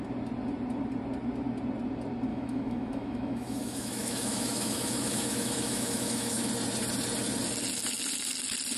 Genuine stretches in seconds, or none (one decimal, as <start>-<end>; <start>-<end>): 0.0-2.3; 6.5-8.8